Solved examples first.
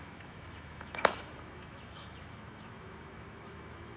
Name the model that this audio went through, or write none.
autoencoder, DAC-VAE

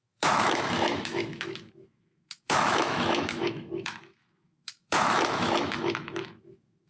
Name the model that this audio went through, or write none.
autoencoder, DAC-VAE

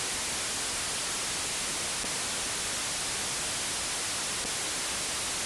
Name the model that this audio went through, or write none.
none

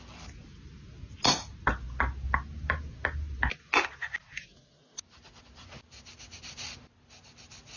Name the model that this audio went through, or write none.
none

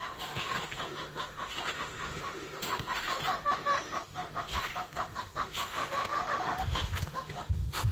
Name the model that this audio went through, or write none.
autoencoder, DAC-VAE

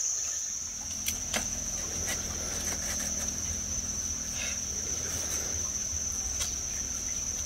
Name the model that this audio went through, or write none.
none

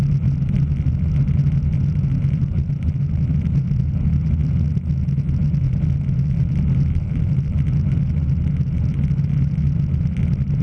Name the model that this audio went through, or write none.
none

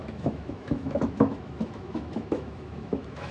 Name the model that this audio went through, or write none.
autoencoder, DAC-VAE